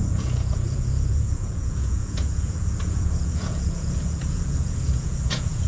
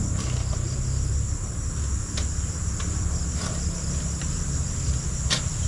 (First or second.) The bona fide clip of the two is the second